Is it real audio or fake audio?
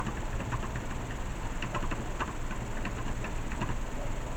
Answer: real